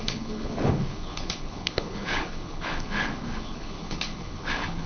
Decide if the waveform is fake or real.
fake